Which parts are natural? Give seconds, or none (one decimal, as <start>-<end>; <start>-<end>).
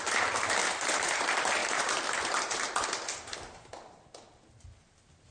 0.0-0.6; 1.2-1.6; 2.5-5.3